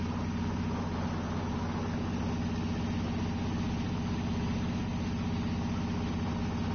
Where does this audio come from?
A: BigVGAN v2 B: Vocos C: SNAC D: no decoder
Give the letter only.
D